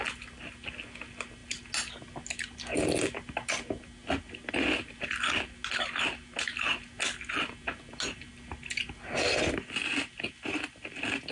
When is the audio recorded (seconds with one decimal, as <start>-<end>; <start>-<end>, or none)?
0.0-11.3